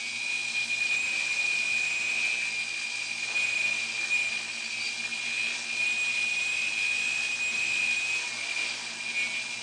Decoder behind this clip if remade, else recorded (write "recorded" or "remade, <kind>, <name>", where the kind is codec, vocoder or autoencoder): recorded